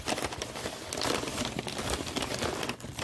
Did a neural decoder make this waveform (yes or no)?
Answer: no